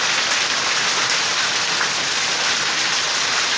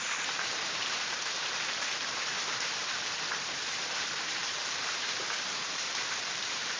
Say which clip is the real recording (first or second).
first